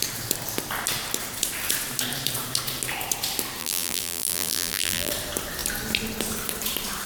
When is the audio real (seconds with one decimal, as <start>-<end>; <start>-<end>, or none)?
0.0-3.6; 5.1-7.1